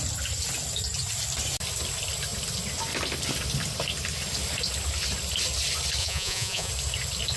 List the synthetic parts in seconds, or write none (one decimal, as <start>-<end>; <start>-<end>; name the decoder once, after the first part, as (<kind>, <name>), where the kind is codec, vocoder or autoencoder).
6.0-6.7 (vocoder, Vocos)